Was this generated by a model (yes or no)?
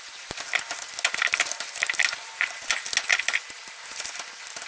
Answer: no